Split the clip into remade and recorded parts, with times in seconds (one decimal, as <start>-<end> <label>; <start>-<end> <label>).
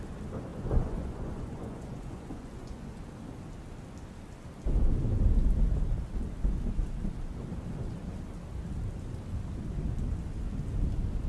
0.0-0.5 recorded; 0.5-3.0 remade; 3.0-11.3 recorded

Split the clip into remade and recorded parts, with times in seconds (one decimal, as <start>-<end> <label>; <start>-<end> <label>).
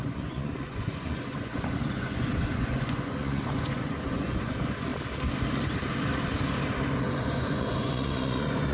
0.0-4.9 remade; 4.9-7.0 recorded; 7.0-8.7 remade